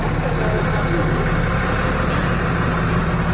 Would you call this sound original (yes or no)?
yes